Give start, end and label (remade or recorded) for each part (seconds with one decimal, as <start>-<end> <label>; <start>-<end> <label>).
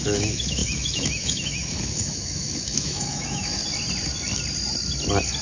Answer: 0.0-3.6 remade; 3.6-5.4 recorded